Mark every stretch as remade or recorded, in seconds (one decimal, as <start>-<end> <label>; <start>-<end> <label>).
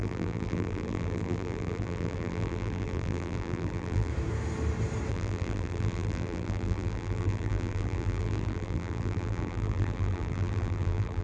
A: 0.0-4.1 remade; 4.1-5.1 recorded; 5.1-11.2 remade